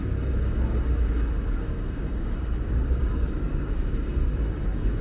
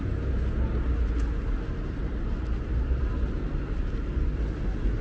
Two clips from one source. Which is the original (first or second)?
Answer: second